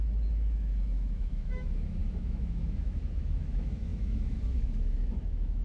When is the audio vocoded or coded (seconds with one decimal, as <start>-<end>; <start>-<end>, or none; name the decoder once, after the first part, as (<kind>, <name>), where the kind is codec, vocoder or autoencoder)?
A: 0.0-5.6 (autoencoder, DAC-VAE)